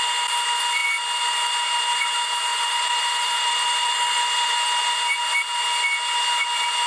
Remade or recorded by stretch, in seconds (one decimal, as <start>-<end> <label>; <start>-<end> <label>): 0.0-2.5 recorded; 2.5-4.9 remade; 4.9-6.9 recorded

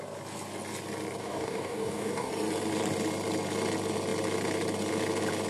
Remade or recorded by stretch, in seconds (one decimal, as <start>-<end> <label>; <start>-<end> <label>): 0.0-1.2 recorded; 1.2-2.3 remade; 2.3-5.5 recorded

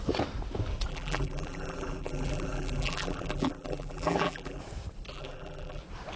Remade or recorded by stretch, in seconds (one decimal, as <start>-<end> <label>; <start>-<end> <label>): 0.0-0.9 recorded; 0.9-4.6 remade; 4.6-5.1 recorded; 5.1-5.8 remade; 5.8-6.2 recorded

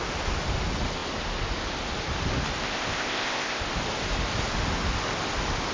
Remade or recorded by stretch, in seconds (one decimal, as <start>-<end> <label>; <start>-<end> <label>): 0.0-2.6 recorded; 2.6-3.6 remade; 3.6-5.7 recorded

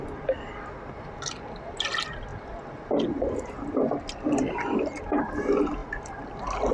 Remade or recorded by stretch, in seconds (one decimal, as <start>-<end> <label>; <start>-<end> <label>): 0.0-6.7 recorded